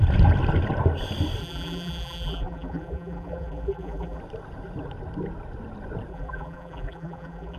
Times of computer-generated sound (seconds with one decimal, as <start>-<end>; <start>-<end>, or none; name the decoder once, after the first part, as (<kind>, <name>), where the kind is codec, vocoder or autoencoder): 1.4-4.2 (vocoder, BigVGAN v2); 6.1-7.6